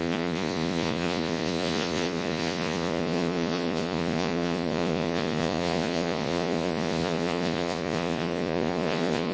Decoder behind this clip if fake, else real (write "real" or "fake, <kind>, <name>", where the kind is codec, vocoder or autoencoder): fake, vocoder, Vocos